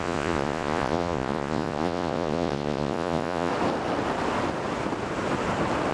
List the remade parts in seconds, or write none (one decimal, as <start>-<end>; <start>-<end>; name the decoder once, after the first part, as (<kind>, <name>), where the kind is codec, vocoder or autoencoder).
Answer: 0.0-3.5 (vocoder, Vocos)